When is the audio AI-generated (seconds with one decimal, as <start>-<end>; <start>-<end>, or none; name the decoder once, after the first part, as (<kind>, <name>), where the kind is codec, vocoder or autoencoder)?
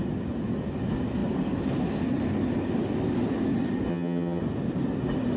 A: 3.9-4.4 (vocoder, HiFi-GAN)